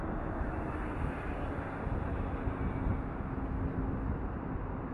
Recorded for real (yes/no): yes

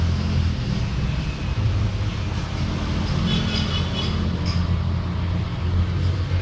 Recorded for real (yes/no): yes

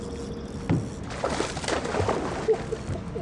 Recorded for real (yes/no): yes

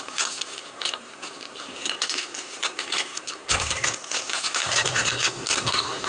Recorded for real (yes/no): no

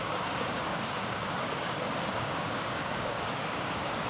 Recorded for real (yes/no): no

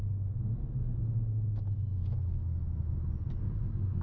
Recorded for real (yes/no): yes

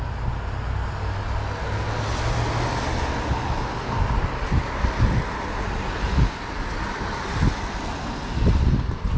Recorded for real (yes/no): yes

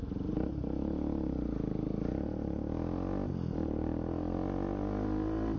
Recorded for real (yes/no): yes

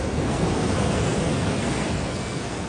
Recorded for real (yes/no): no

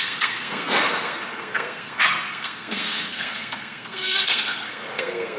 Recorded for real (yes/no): no